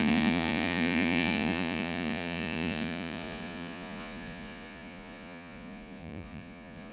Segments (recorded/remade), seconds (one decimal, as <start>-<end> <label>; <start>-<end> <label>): 0.0-6.9 remade